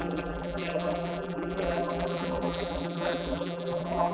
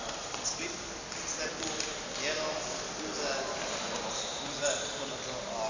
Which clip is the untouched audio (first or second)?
second